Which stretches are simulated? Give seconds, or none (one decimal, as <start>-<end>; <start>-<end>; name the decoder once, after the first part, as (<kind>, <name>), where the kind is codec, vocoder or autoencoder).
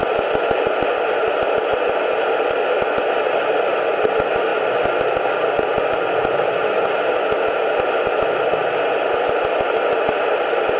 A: none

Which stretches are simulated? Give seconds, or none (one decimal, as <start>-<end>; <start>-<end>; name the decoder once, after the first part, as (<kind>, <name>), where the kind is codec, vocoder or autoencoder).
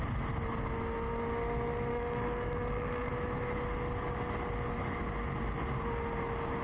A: 1.9-3.1 (codec, DAC)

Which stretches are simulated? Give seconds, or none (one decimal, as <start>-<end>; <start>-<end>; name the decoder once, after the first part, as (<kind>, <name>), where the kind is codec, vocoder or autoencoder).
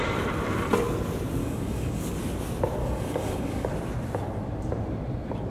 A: 1.4-2.0 (codec, DAC); 2.8-3.7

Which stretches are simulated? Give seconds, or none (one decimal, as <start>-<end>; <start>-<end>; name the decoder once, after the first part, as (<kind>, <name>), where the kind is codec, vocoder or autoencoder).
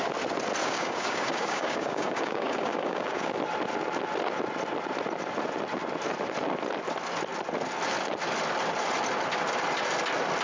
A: 0.6-3.3 (codec, DAC)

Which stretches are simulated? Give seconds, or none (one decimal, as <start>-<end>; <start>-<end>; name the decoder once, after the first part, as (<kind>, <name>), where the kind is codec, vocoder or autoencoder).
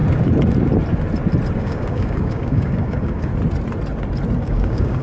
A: 1.6-3.3 (codec, DAC); 4.4-5.0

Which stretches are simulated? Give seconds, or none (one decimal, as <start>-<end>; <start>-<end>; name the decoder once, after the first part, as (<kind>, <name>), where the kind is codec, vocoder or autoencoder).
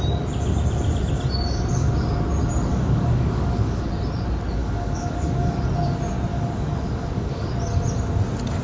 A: 2.7-3.9 (codec, DAC); 4.6-5.6; 6.3-7.5